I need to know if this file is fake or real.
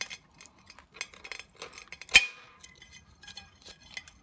real